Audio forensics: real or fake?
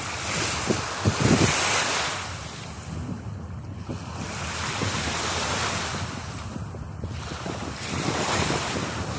real